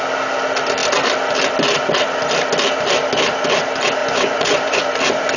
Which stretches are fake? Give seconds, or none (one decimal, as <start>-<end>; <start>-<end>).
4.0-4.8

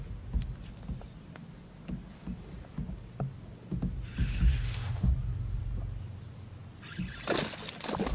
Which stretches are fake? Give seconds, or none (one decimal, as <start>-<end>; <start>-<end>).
4.2-5.1

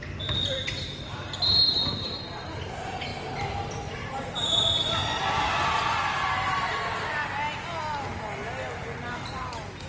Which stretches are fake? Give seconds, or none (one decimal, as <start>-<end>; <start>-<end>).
none